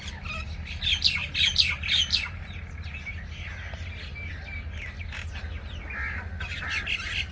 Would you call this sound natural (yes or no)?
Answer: yes